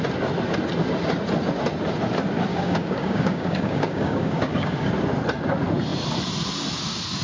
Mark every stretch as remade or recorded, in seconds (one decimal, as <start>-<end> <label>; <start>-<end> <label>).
0.0-2.5 recorded; 2.5-4.9 remade; 4.9-7.2 recorded